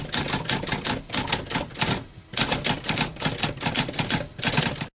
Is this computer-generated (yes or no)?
no